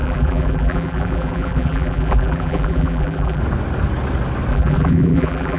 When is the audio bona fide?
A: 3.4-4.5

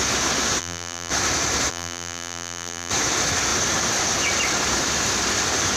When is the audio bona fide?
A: 0.0-0.6; 1.1-1.7; 2.9-5.8

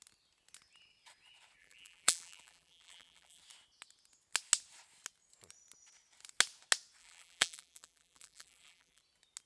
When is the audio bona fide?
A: 0.0-1.6; 3.4-7.0; 9.0-9.5